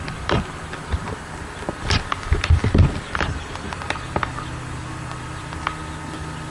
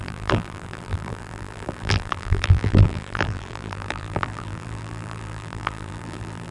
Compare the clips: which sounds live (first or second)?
first